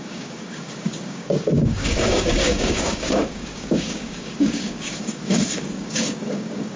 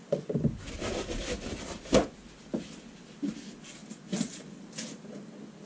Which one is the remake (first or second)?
first